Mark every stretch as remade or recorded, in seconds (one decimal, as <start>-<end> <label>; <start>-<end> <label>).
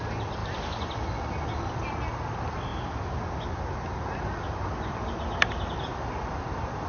0.0-6.9 recorded